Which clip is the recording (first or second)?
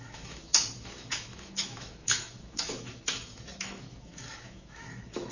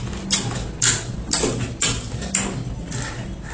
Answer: second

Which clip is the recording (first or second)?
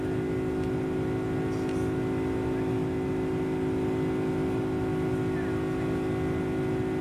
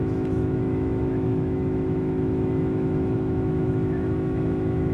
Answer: first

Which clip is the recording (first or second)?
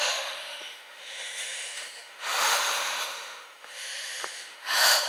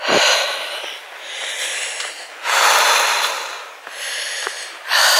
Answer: second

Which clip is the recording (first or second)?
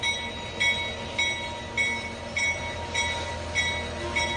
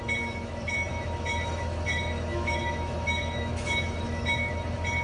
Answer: first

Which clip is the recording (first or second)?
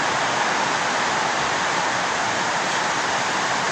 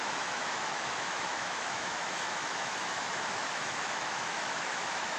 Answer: first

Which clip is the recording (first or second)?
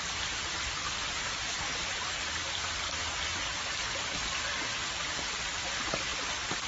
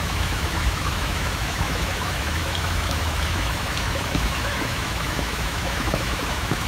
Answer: first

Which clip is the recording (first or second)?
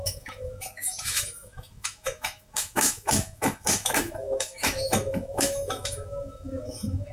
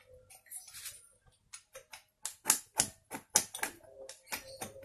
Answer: second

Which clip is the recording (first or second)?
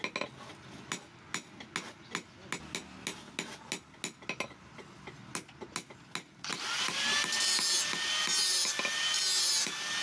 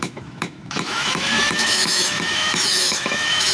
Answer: first